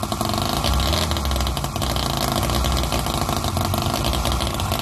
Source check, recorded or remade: recorded